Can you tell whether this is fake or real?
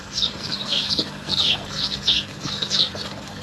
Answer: fake